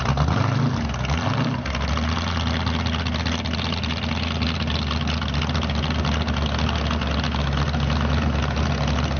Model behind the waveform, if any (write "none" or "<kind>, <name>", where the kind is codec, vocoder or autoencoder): none